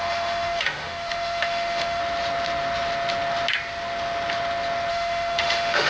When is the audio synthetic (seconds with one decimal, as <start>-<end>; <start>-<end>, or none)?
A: 0.0-2.0; 4.9-5.9